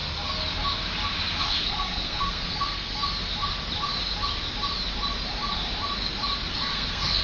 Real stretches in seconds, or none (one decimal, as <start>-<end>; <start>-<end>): 0.0-1.4; 3.0-6.5